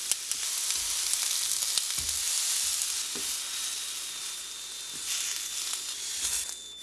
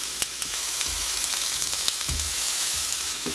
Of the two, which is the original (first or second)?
first